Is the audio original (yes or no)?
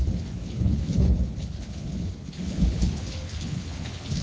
no